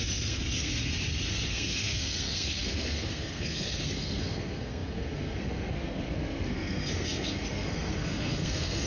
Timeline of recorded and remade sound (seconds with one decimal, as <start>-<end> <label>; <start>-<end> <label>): 0.0-0.7 remade; 0.7-1.3 recorded; 1.3-8.9 remade